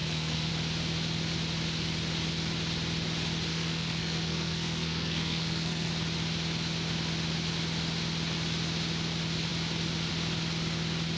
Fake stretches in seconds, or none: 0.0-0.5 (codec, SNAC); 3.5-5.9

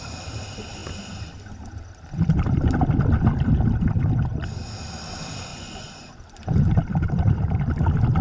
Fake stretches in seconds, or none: 5.5-6.1 (vocoder, Vocos)

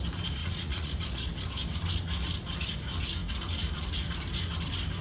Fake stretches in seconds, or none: 0.4-0.9 (vocoder, Vocos)

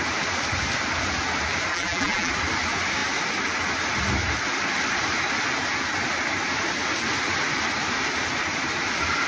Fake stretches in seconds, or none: 1.7-2.3 (vocoder, BigVGAN v2)

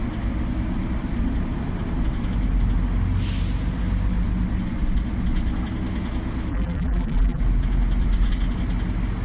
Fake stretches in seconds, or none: 6.5-7.4 (vocoder, BigVGAN v2)

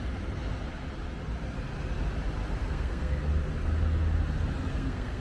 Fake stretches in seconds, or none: 2.6-3.2 (codec, SNAC); 4.7-5.2

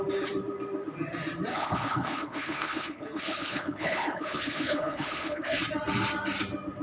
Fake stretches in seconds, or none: 1.5-5.6 (codec, HILCodec)

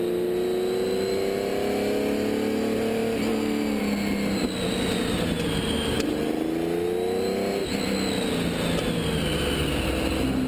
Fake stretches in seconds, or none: none